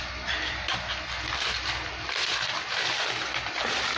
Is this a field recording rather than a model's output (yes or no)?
yes